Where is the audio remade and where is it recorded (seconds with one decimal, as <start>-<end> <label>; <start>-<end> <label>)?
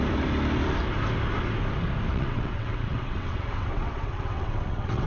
0.0-2.1 recorded; 2.1-5.1 remade